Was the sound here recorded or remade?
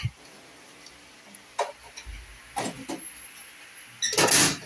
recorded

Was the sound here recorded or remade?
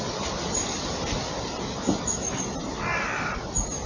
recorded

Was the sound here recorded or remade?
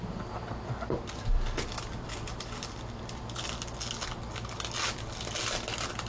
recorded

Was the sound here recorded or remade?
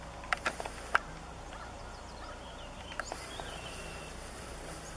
recorded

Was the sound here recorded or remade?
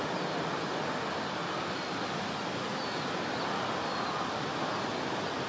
recorded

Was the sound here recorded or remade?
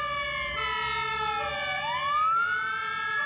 recorded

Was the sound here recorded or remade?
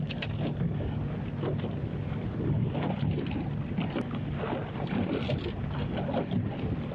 recorded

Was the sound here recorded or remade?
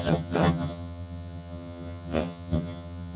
remade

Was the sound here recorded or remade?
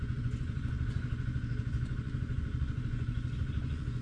remade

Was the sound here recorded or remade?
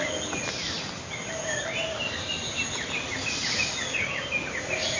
recorded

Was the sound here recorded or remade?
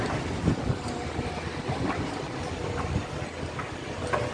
recorded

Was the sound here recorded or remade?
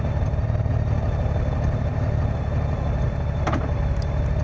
recorded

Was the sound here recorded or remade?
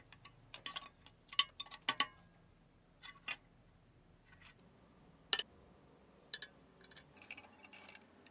recorded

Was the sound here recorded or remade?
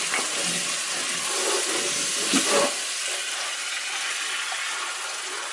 recorded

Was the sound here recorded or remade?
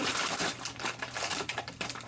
remade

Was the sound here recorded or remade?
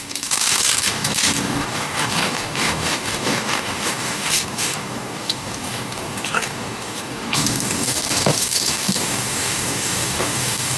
remade